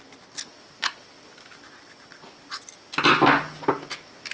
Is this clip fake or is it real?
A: real